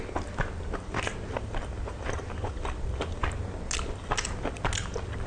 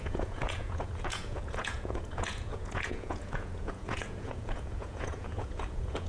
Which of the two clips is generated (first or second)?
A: second